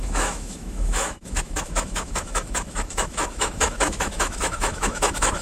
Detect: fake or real fake